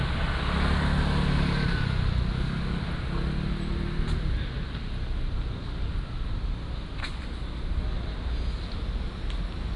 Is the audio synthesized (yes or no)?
no